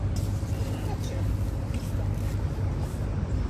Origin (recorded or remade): recorded